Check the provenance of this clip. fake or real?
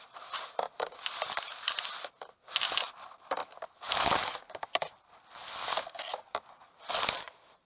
real